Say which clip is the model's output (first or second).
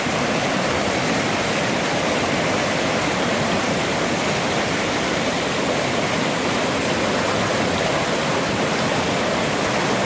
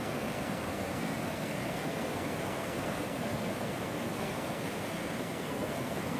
second